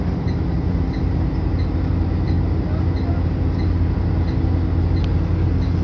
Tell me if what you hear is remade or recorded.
recorded